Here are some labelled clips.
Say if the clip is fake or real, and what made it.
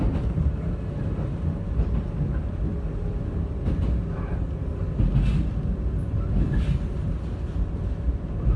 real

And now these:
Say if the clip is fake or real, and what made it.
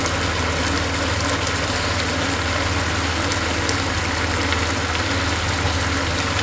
real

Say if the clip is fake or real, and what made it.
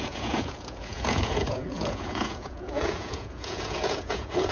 fake, vocoder, Vocos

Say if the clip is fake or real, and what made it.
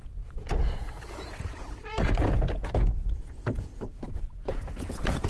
fake, vocoder, Vocos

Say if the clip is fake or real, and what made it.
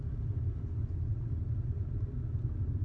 real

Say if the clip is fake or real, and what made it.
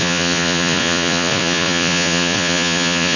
fake, vocoder, Vocos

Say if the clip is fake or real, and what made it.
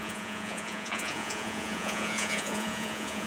fake, vocoder, Vocos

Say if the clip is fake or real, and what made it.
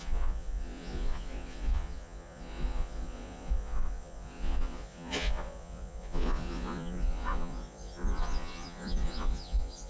fake, vocoder, Vocos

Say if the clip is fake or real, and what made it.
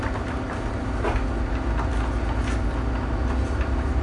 real